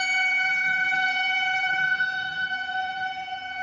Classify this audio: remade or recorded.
remade